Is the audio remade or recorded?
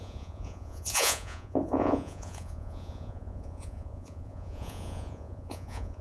remade